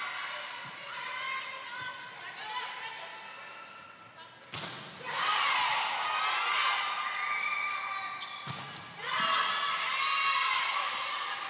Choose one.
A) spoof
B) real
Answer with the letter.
B